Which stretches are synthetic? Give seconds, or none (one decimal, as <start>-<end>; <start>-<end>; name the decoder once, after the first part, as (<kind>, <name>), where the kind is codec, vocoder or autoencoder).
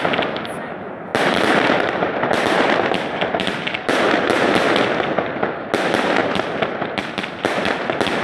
1.1-4.0 (vocoder, BigVGAN v2); 6.2-7.2